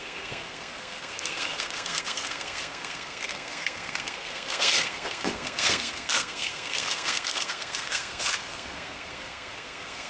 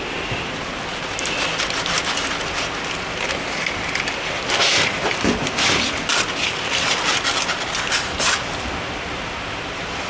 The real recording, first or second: second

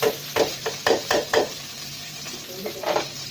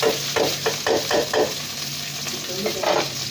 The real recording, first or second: second